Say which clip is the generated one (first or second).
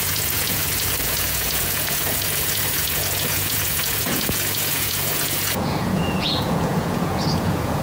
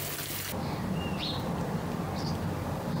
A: first